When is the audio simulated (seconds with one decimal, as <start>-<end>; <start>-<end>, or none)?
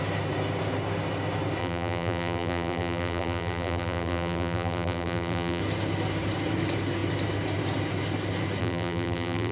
1.6-5.6; 8.6-9.5